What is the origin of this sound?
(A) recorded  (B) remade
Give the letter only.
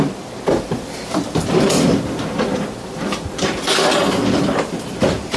B